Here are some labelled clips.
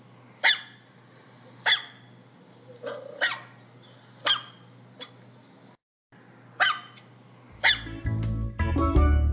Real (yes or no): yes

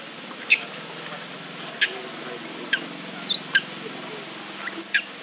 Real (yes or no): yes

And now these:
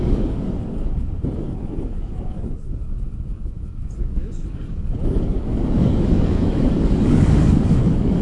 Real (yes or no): no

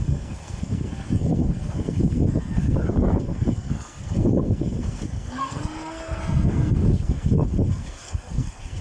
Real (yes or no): no